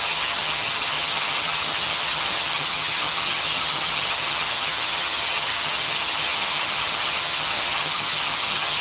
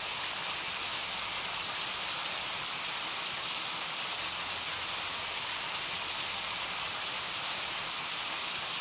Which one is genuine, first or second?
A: second